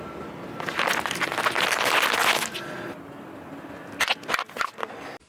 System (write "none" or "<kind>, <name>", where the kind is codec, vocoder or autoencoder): none